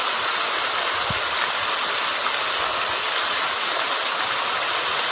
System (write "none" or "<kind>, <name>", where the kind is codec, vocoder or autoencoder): none